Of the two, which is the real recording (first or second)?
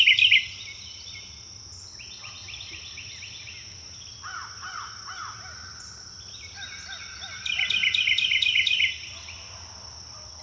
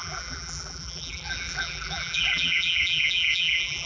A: first